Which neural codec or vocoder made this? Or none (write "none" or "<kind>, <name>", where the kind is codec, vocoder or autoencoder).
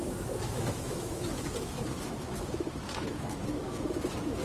autoencoder, DAC-VAE